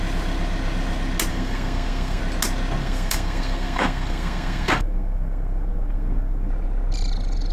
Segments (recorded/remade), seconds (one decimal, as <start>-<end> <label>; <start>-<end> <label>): 0.0-1.3 recorded; 1.3-2.2 remade; 2.2-2.8 recorded; 2.8-6.5 remade; 6.5-7.5 recorded